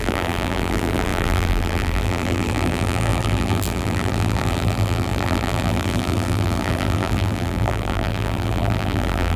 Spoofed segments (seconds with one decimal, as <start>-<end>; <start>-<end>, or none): 0.0-9.4

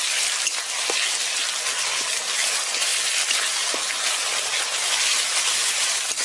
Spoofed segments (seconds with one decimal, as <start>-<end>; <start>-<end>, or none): 2.9-3.7

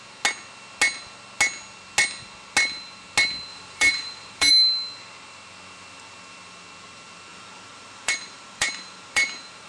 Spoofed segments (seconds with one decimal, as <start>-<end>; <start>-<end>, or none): 3.5-4.5; 7.3-9.7

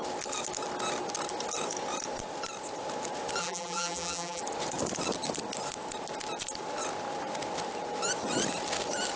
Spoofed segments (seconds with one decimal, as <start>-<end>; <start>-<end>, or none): 3.4-4.4

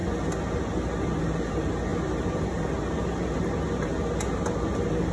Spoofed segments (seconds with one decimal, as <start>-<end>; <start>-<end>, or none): 1.2-5.1